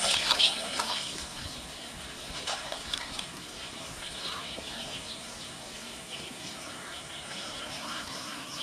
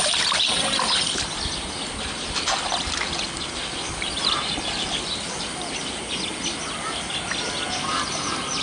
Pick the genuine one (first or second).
second